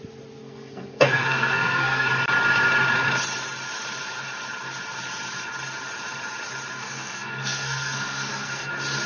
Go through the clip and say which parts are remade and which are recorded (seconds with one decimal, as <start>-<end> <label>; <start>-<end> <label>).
0.0-0.4 recorded; 0.4-2.1 remade; 2.1-6.8 recorded; 6.8-8.7 remade; 8.7-9.1 recorded